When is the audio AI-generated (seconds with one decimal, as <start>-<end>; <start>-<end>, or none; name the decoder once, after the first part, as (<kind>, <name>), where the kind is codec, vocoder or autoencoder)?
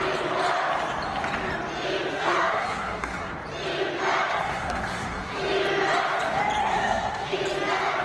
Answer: 2.1-3.3 (codec, SNAC); 4.3-5.4; 6.6-7.4